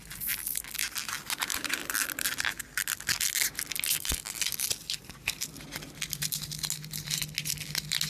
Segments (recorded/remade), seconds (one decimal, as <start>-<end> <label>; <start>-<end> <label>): 0.0-8.1 recorded